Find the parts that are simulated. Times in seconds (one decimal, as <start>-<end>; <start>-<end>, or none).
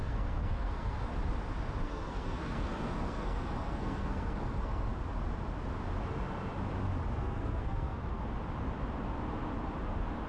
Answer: 0.0-1.1; 1.8-4.9; 7.2-8.2